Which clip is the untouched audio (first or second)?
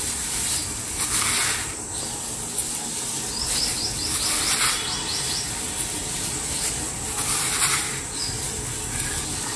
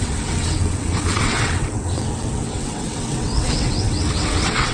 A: first